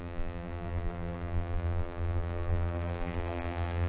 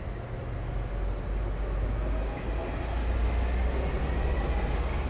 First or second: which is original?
second